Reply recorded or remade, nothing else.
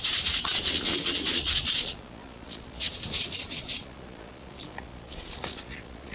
remade